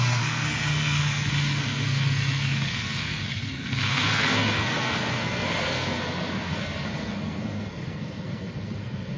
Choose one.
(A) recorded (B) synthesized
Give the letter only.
B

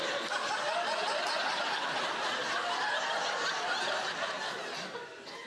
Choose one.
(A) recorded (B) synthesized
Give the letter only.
A